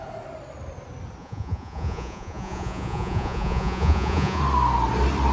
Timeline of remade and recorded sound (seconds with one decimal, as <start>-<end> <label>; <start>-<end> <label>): 0.0-1.2 recorded; 1.2-4.4 remade; 4.4-5.3 recorded